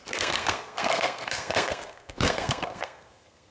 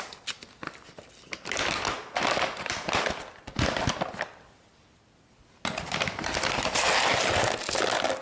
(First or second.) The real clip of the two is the second